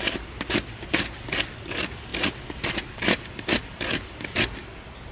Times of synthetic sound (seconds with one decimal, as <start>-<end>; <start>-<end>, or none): none